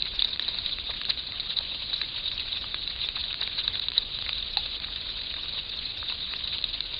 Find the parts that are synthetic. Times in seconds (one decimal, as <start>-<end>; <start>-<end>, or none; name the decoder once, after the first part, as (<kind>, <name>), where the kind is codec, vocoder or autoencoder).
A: 0.0-7.0 (vocoder, Vocos)